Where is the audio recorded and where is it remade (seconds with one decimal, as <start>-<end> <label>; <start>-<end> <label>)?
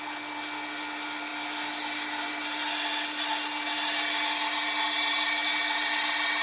0.0-6.4 recorded